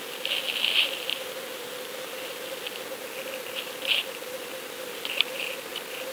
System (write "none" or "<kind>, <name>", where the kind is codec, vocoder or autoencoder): none